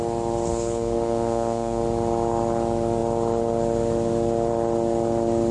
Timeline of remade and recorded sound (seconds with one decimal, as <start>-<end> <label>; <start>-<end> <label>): 0.0-0.5 recorded; 0.5-1.8 remade; 1.8-5.5 recorded